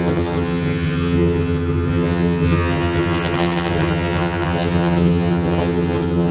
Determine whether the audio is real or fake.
fake